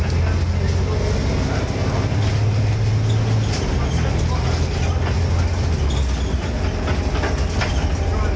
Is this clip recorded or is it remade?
recorded